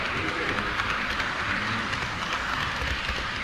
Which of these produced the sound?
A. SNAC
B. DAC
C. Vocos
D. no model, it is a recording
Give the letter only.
D